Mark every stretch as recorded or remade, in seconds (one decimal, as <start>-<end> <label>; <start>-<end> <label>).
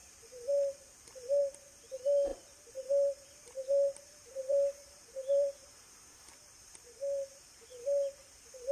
0.0-2.3 recorded; 2.3-6.7 remade; 6.7-8.7 recorded